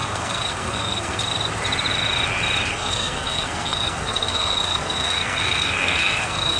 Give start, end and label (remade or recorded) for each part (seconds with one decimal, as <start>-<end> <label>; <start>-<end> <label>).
0.0-1.2 remade; 1.2-2.7 recorded; 2.7-6.6 remade